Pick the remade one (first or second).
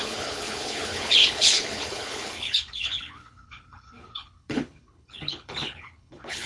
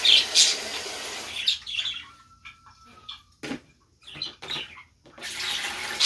first